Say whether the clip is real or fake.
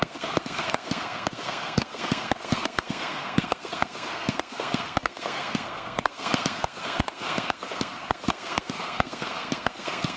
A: fake